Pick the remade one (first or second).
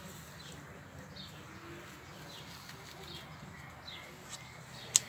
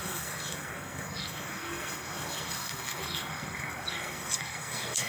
second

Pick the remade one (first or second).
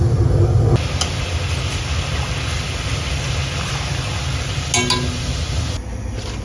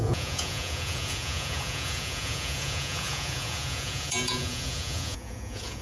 second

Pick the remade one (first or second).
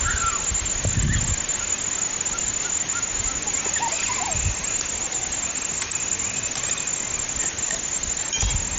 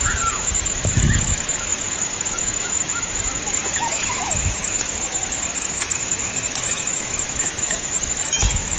second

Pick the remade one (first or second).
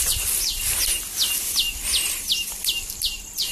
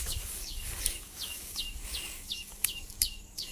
second